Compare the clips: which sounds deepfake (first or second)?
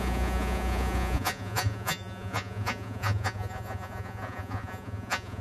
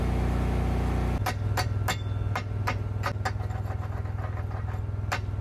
first